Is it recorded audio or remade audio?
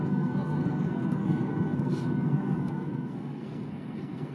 remade